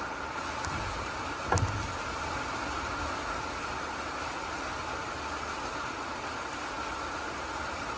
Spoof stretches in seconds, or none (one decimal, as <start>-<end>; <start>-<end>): none